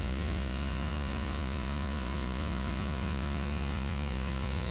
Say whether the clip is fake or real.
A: fake